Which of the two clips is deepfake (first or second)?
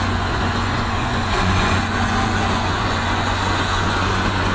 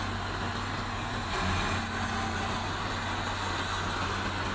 first